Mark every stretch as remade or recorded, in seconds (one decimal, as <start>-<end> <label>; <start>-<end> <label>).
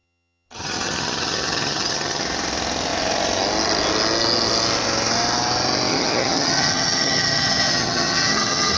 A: 0.0-2.2 remade; 2.2-5.9 recorded; 5.9-8.8 remade